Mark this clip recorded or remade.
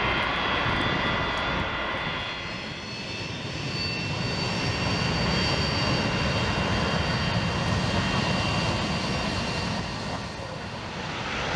recorded